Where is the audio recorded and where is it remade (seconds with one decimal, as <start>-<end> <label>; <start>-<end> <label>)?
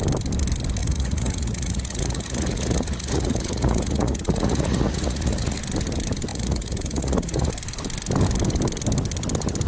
0.0-0.8 recorded; 0.8-5.6 remade; 5.6-6.3 recorded; 6.3-7.5 remade; 7.5-9.7 recorded